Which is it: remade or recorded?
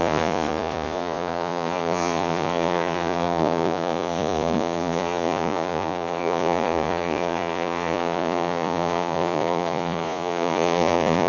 remade